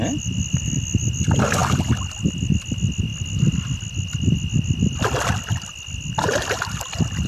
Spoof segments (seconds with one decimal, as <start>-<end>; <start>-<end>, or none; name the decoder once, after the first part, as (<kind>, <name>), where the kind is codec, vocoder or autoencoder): none